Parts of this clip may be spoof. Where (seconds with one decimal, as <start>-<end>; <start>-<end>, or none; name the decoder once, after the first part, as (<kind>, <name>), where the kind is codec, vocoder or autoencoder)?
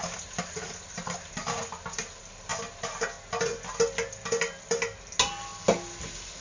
none